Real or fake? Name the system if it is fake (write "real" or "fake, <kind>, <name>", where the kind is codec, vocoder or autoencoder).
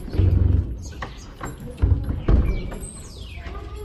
real